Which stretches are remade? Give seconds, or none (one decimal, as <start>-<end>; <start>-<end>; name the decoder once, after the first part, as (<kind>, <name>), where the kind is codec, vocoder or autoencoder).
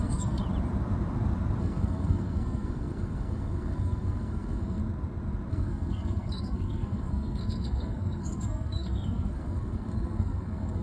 0.0-0.4 (codec, SNAC); 1.6-4.8; 5.5-10.8